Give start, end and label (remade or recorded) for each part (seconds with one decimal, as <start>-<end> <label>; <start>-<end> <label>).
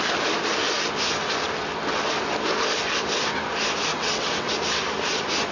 0.0-3.9 recorded; 3.9-4.5 remade; 4.5-5.5 recorded